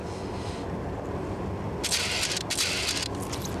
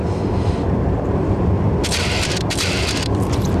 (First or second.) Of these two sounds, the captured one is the first